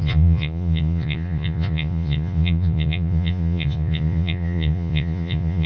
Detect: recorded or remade remade